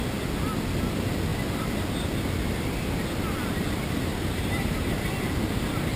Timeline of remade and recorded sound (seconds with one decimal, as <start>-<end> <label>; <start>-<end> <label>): 0.0-4.1 recorded; 4.1-5.1 remade; 5.1-6.0 recorded